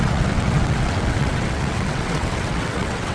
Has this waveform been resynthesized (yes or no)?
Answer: yes